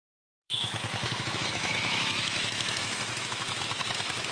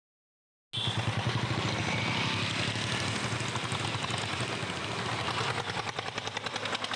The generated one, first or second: first